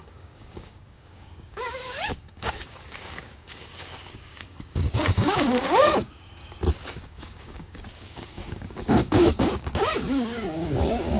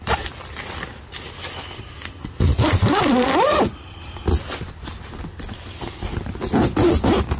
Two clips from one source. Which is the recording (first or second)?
second